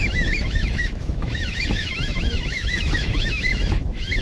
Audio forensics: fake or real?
fake